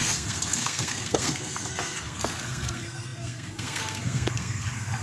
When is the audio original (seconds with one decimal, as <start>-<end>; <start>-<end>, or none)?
none